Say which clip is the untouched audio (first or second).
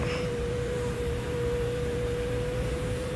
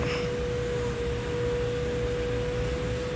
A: second